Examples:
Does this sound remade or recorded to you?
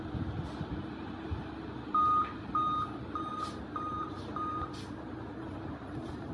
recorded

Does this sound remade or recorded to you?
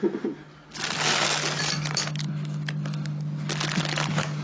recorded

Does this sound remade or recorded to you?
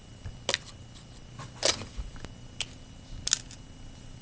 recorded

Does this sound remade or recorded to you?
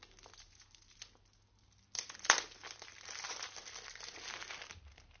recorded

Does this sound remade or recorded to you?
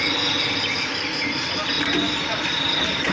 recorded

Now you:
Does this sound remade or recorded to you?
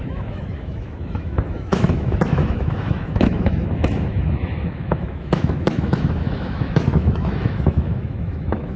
remade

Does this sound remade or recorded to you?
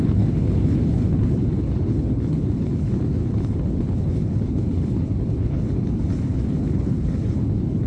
remade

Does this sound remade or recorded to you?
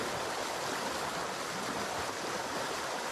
recorded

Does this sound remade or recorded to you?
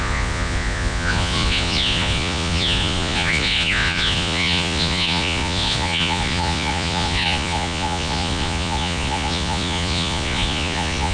remade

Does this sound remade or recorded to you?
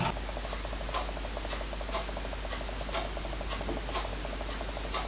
recorded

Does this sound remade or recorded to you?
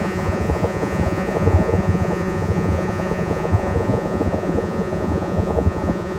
remade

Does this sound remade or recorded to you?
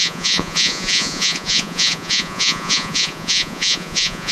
remade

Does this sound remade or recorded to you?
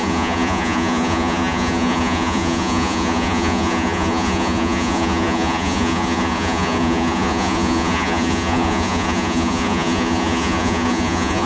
remade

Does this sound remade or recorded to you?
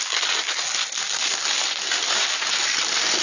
recorded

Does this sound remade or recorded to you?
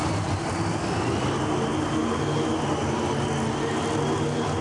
recorded